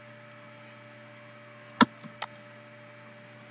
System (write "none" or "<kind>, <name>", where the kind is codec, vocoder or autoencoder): none